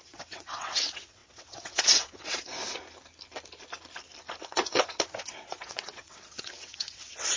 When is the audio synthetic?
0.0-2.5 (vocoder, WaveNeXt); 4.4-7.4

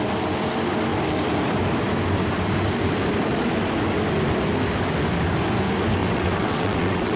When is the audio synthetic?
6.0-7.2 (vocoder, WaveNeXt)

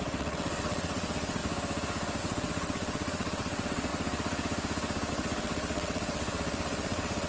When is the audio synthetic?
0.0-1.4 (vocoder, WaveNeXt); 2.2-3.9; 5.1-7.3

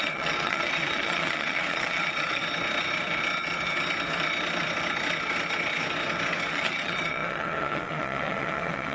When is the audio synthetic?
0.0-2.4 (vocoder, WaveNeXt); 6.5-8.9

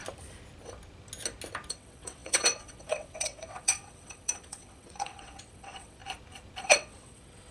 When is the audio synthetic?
1.7-6.0 (vocoder, WaveNeXt); 6.6-7.5

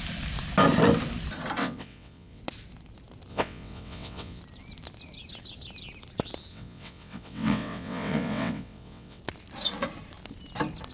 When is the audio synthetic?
1.6-2.4 (vocoder, WaveNeXt); 3.3-4.4; 6.5-9.2

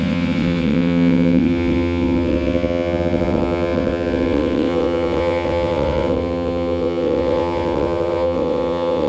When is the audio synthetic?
0.0-9.1 (vocoder, WaveNeXt)

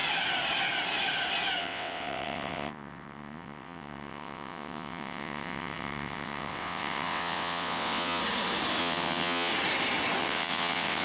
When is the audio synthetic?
1.6-8.2 (vocoder, WaveNeXt); 8.8-9.5; 10.2-11.0